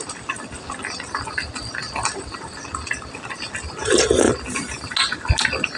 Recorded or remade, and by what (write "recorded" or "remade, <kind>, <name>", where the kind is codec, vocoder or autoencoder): recorded